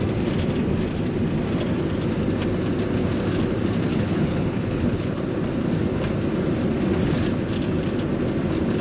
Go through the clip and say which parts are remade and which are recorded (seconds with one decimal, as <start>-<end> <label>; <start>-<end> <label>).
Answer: 0.0-3.9 recorded; 3.9-5.2 remade; 5.2-8.8 recorded